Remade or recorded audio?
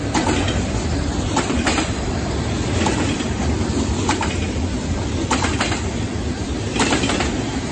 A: remade